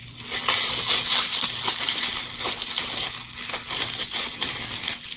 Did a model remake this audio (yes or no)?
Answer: no